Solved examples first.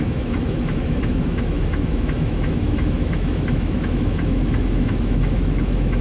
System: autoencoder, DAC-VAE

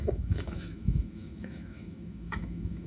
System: autoencoder, DAC-VAE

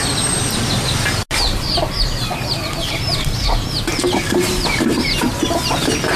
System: none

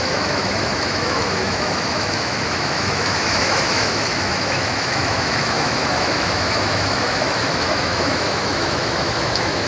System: autoencoder, DAC-VAE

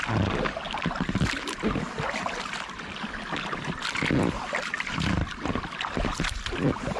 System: none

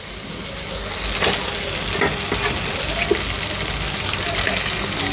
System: none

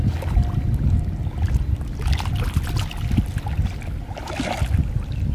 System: none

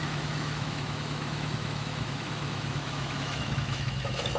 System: autoencoder, DAC-VAE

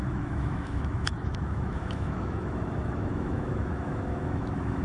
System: autoencoder, DAC-VAE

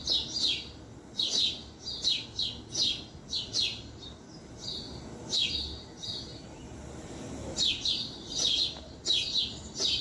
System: none